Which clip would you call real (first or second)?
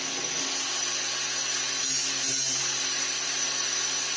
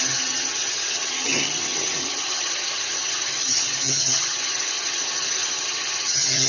first